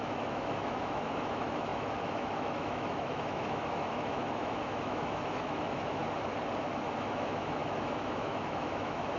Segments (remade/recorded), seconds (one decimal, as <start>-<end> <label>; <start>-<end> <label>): 0.0-6.0 remade; 6.0-6.6 recorded; 6.6-9.2 remade